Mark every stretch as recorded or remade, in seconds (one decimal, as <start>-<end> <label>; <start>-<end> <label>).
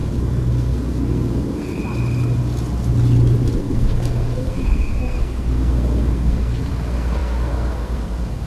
0.0-1.8 remade; 1.8-3.6 recorded; 3.6-8.5 remade